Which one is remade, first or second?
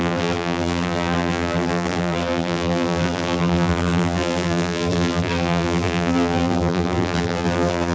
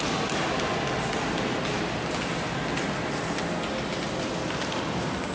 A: first